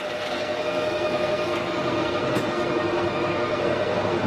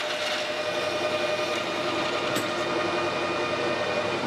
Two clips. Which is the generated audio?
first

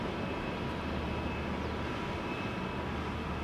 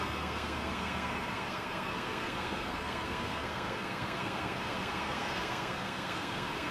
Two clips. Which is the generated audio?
second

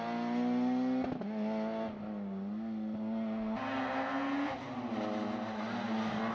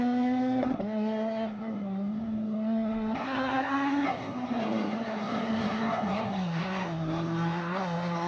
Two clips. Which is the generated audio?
second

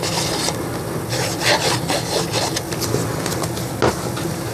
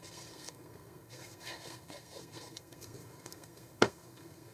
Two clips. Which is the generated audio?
second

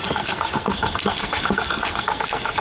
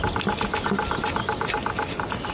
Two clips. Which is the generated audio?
first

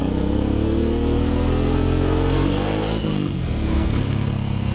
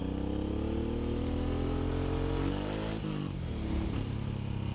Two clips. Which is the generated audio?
first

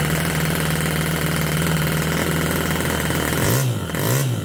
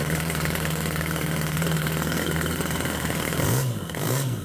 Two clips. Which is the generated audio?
second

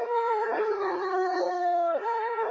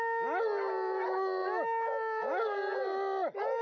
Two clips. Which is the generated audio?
first